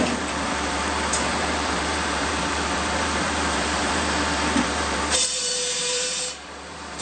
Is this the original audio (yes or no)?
no